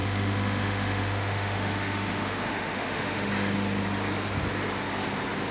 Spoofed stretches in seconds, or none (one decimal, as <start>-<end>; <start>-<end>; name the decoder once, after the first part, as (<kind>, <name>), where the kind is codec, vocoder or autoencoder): 0.0-3.3 (autoencoder, DAC-VAE)